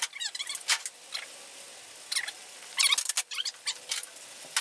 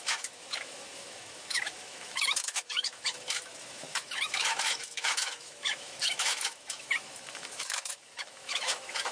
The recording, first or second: first